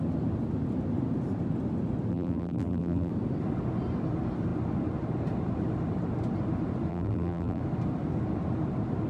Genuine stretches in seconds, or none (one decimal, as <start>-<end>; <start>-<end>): 0.0-2.1; 3.1-6.9; 7.6-9.1